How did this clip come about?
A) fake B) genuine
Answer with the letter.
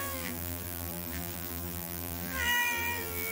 A